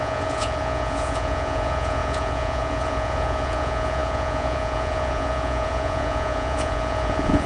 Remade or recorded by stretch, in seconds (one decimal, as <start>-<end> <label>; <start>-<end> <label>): 0.0-7.5 remade